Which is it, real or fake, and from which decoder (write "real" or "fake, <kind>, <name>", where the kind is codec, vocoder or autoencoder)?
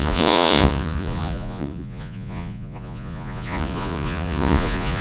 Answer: fake, vocoder, Vocos